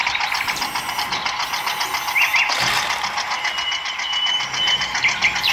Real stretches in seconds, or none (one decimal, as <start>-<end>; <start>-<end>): 0.9-2.3; 2.9-5.5